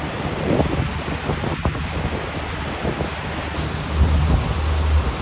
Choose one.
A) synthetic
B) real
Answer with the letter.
B